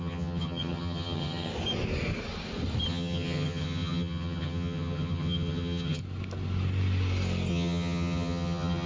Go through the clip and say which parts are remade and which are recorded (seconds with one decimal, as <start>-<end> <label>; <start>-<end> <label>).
0.0-1.5 remade; 1.5-2.9 recorded; 2.9-6.0 remade; 6.0-7.5 recorded; 7.5-8.9 remade